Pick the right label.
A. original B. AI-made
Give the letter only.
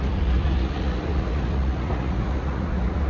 B